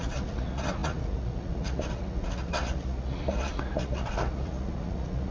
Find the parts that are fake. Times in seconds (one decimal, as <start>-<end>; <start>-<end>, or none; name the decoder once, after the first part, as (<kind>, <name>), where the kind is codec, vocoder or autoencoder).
0.0-5.3 (vocoder, Vocos)